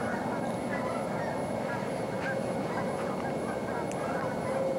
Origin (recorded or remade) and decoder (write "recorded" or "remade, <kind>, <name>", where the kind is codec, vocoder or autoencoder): recorded